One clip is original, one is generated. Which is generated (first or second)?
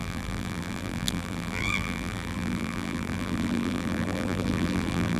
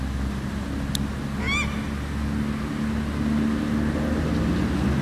first